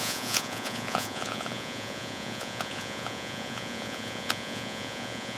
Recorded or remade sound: remade